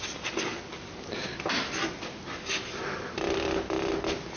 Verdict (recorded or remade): recorded